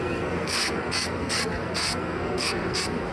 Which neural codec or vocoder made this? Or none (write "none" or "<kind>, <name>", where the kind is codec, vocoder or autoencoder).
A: codec, SNAC